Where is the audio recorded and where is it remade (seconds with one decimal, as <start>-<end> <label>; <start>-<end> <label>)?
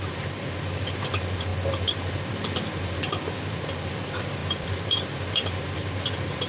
0.0-6.5 recorded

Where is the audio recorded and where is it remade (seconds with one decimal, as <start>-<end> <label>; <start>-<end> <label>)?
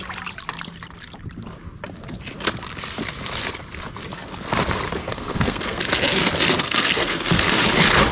0.0-5.0 recorded; 5.0-5.8 remade; 5.8-6.5 recorded; 6.5-7.6 remade; 7.6-8.1 recorded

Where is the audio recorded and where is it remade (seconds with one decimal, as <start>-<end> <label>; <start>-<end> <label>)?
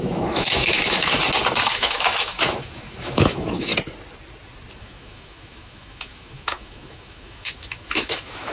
0.0-1.1 remade; 1.1-1.6 recorded; 1.6-3.7 remade; 3.7-4.8 recorded; 4.8-8.5 remade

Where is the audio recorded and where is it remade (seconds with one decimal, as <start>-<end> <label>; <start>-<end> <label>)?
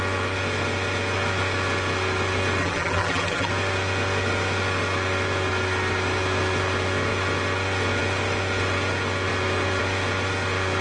0.0-2.6 recorded; 2.6-3.5 remade; 3.5-10.8 recorded